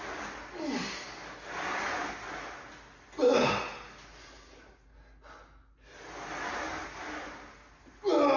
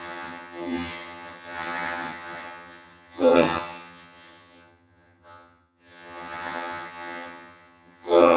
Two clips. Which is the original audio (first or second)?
first